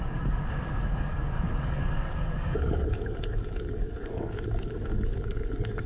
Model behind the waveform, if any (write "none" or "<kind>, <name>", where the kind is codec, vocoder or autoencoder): codec, DAC